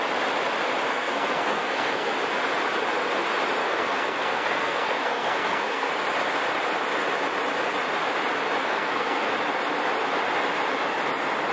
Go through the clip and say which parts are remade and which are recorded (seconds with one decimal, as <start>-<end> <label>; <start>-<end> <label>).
0.0-0.9 recorded; 0.9-2.1 remade; 2.1-3.6 recorded; 3.6-5.9 remade; 5.9-8.6 recorded; 8.6-9.3 remade; 9.3-11.5 recorded